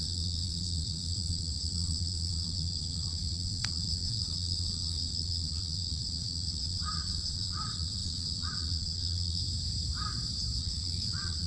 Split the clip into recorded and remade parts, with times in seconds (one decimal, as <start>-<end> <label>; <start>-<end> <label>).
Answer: 0.0-9.4 remade; 9.4-10.6 recorded; 10.6-11.5 remade